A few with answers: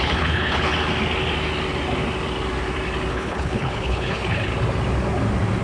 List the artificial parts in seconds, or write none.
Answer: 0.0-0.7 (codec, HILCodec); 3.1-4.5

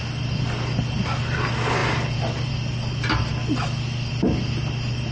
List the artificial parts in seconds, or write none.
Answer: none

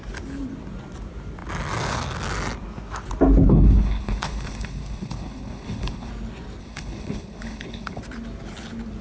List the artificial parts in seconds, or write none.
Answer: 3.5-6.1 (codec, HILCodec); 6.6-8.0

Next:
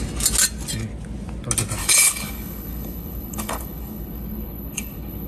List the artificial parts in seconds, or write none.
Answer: 1.8-5.3 (codec, HILCodec)